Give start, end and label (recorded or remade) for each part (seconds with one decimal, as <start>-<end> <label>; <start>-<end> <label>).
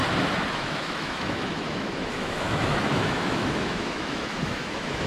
0.0-0.5 recorded; 0.5-5.1 remade